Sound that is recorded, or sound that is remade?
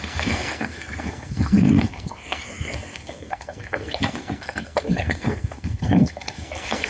remade